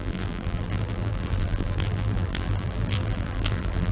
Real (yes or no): no